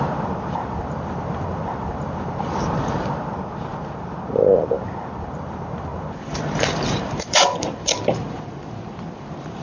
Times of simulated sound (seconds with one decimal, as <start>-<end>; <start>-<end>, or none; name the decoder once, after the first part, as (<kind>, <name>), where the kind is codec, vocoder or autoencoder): 0.0-9.6 (vocoder, BigVGAN v2)